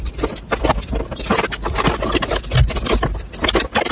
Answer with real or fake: real